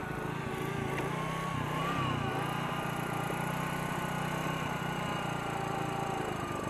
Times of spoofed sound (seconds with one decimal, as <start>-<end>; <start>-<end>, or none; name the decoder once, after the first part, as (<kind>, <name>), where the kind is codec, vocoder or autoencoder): none